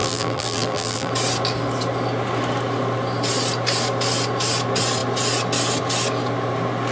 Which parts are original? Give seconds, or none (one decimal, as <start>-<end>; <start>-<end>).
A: 1.1-6.9